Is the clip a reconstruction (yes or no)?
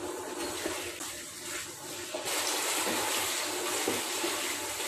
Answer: no